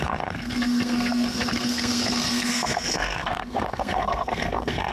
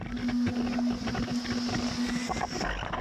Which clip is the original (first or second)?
second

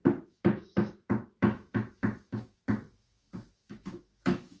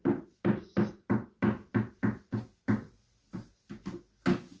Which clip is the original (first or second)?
second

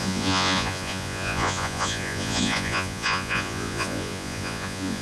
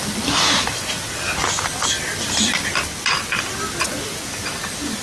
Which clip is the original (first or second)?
second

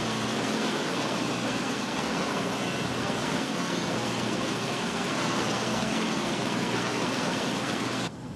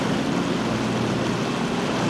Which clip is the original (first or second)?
second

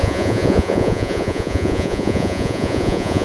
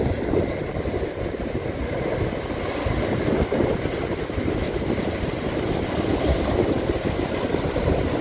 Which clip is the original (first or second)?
second